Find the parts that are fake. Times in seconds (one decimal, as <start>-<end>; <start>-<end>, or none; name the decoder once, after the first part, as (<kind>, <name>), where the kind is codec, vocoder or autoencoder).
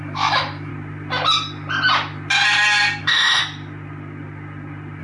0.0-0.7 (autoencoder, DAC-VAE); 3.0-3.4